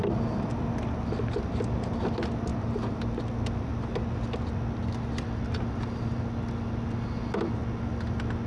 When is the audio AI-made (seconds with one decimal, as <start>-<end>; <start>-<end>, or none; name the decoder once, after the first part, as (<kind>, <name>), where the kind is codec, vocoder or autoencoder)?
2.5-3.2 (vocoder, BigVGAN v2)